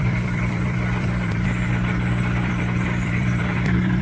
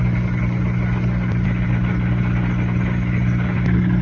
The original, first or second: second